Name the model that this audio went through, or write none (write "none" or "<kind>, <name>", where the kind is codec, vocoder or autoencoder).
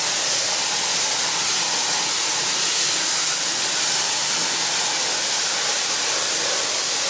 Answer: none